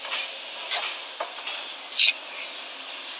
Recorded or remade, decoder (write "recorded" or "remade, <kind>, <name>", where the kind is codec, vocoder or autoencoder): recorded